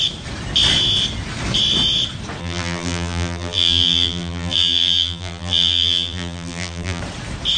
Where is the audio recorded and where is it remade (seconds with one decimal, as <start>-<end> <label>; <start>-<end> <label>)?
0.0-2.4 recorded; 2.4-7.0 remade; 7.0-7.6 recorded